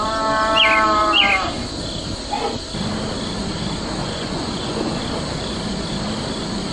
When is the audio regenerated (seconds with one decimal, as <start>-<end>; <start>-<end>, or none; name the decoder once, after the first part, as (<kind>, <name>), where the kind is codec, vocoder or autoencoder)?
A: 4.0-5.0 (vocoder, Vocos)